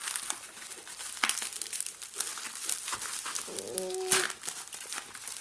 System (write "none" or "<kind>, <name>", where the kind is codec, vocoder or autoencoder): none